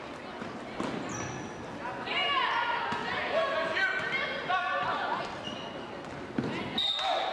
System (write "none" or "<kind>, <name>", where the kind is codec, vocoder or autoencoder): none